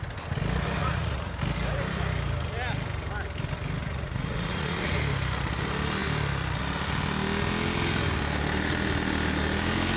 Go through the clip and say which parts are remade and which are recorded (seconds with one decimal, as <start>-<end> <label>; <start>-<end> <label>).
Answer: 0.0-0.8 recorded; 0.8-1.3 remade; 1.3-3.8 recorded; 3.8-5.0 remade; 5.0-10.0 recorded